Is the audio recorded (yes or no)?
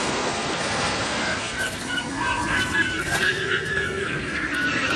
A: no